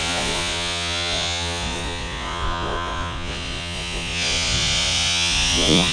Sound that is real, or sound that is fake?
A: fake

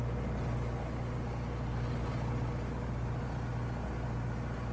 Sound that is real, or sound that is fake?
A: real